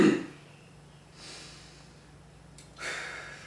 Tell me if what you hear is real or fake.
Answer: real